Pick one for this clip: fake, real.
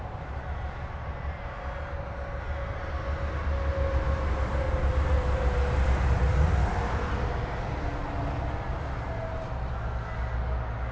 real